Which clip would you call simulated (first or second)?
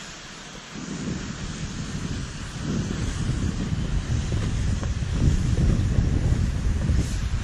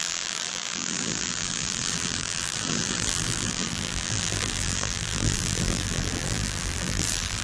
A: second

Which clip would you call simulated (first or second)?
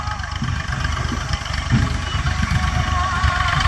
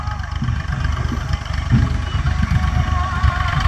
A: first